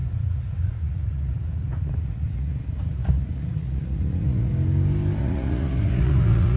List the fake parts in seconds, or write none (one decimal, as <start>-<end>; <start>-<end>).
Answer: 0.0-4.5; 5.2-6.6